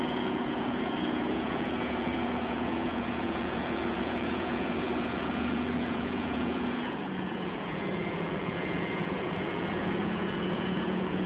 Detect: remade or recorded remade